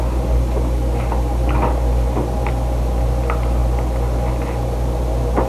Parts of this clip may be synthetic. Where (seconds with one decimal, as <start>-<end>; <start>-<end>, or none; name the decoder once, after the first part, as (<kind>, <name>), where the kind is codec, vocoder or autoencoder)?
none